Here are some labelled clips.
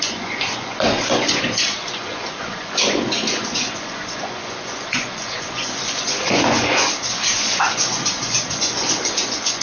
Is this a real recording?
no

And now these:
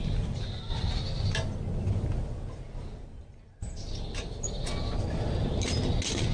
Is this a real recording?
yes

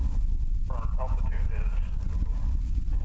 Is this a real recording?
yes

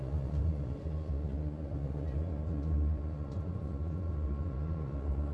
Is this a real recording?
no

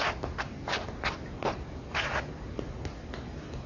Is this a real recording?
yes